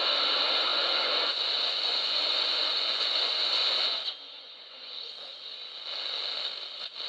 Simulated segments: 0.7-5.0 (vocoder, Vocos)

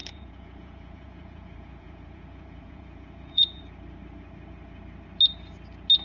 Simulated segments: 0.0-3.6 (vocoder, Vocos)